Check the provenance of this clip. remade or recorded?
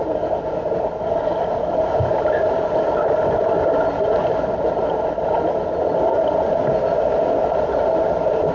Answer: recorded